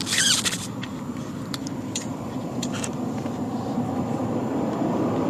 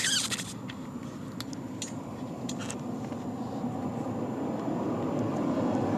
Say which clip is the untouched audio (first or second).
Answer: second